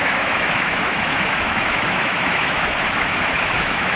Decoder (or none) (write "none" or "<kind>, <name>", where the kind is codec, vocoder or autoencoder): autoencoder, DAC-VAE